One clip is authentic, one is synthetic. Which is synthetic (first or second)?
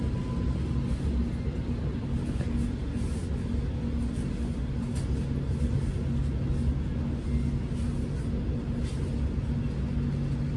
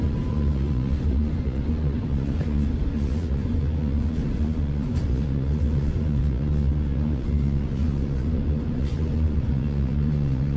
second